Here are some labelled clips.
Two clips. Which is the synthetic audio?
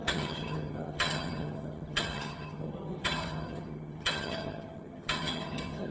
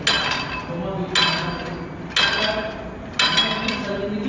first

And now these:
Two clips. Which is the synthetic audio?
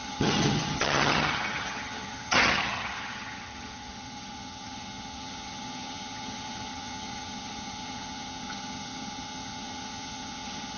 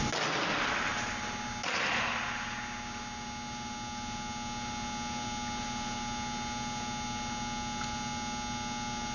first